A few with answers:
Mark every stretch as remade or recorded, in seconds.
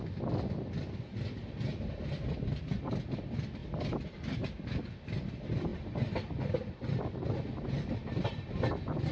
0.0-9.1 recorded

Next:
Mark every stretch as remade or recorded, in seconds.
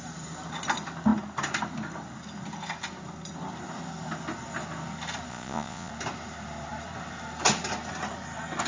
0.0-5.3 recorded; 5.3-5.9 remade; 5.9-8.7 recorded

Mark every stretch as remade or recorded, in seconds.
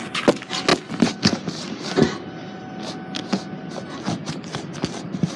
0.0-0.7 recorded; 0.7-1.6 remade; 1.6-5.4 recorded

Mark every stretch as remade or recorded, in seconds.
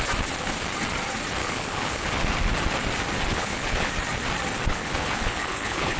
0.0-1.4 recorded; 1.4-2.1 remade; 2.1-3.3 recorded; 3.3-3.9 remade; 3.9-4.7 recorded; 4.7-6.0 remade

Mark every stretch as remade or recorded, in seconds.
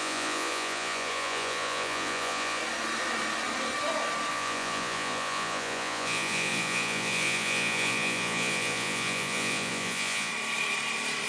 0.0-2.6 remade; 2.6-4.3 recorded; 4.3-10.3 remade; 10.3-11.3 recorded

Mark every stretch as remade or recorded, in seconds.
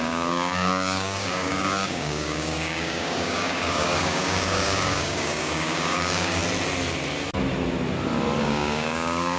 0.0-6.4 remade; 6.4-8.4 recorded; 8.4-9.4 remade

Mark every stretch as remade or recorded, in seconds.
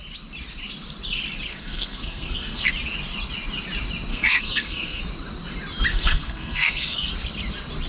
0.0-1.5 recorded; 1.5-2.7 remade; 2.7-4.1 recorded; 4.1-5.0 remade; 5.0-5.9 recorded; 5.9-7.1 remade; 7.1-7.9 recorded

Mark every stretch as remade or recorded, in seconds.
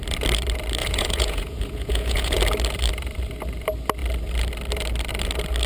0.0-0.8 recorded; 0.8-2.4 remade; 2.4-5.7 recorded